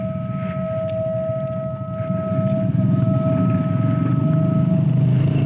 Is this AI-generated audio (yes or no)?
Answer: no